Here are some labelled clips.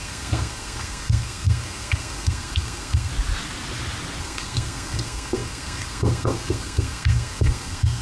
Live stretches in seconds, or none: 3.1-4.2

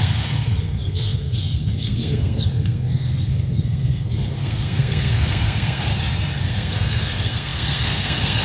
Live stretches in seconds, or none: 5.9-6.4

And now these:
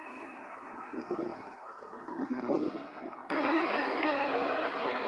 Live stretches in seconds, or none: none

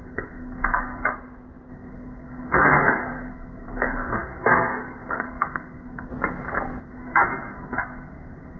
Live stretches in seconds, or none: 1.1-1.7; 6.1-6.8

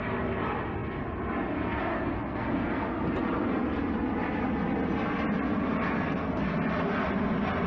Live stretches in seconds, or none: 0.0-1.9; 2.9-5.8; 6.4-7.7

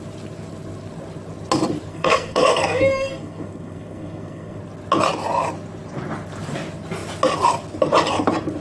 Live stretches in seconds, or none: 0.0-1.9; 4.6-8.6